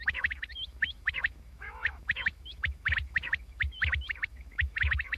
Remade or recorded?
remade